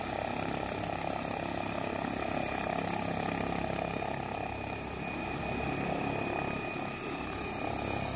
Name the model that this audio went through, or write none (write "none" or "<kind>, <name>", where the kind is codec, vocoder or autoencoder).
none